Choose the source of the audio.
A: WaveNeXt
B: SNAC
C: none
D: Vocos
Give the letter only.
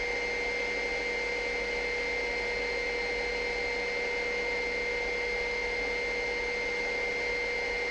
C